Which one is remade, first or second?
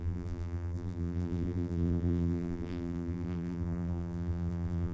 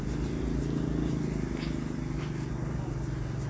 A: first